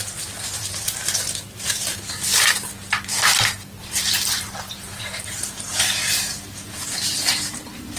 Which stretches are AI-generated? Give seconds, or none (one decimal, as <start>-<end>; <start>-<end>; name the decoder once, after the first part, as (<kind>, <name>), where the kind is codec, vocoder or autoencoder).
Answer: 0.0-2.3 (vocoder, BigVGAN v2); 3.8-8.0